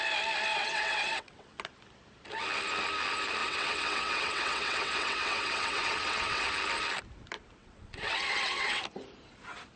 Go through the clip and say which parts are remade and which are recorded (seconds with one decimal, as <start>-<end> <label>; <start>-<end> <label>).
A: 0.0-0.5 recorded; 0.5-1.6 remade; 1.6-3.4 recorded; 3.4-6.5 remade; 6.5-7.6 recorded; 7.6-8.8 remade; 8.8-9.8 recorded